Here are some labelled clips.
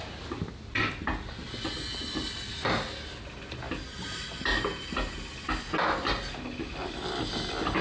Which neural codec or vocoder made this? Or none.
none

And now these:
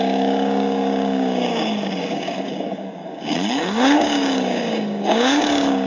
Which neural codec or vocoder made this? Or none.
codec, DAC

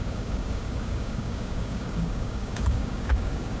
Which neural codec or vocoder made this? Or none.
codec, DAC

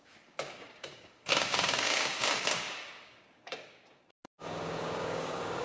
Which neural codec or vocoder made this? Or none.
codec, DAC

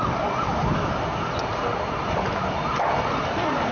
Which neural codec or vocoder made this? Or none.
none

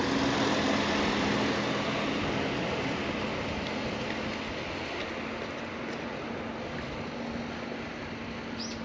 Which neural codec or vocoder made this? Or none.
none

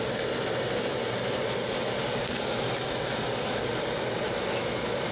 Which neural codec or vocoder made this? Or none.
none